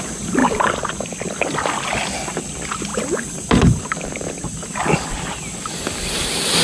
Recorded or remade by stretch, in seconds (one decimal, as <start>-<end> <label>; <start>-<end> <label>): 0.0-0.4 recorded; 0.4-0.9 remade; 0.9-2.9 recorded; 2.9-3.8 remade; 3.8-6.6 recorded